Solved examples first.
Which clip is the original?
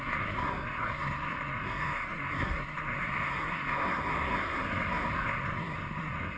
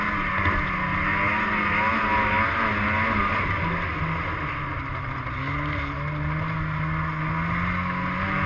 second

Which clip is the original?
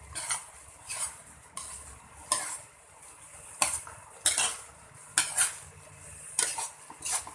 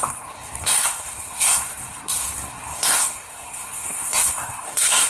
first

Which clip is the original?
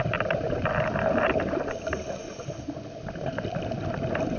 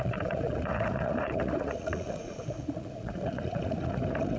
first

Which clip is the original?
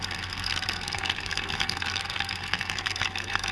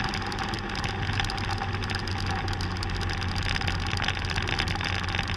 second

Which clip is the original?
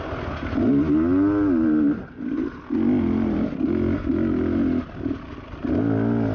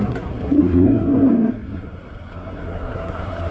first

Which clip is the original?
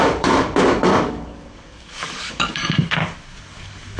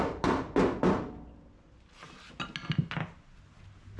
second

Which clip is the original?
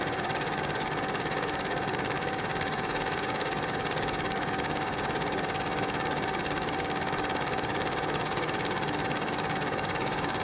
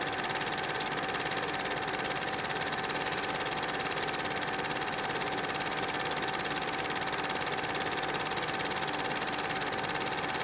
second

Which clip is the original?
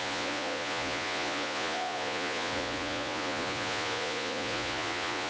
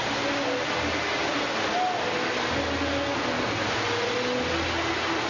second